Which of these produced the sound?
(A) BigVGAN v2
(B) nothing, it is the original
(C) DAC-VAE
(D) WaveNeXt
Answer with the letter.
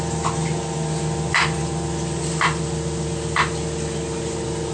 B